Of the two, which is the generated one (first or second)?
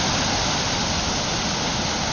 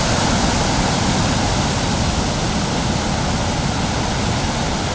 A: first